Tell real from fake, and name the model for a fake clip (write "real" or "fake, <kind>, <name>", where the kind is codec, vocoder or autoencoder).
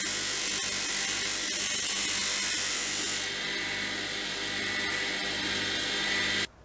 real